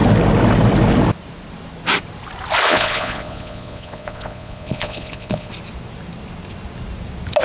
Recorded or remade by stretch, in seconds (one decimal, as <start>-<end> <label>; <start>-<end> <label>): 0.0-2.7 recorded; 2.7-5.5 remade; 5.5-7.4 recorded